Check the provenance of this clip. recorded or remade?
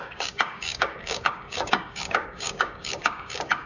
remade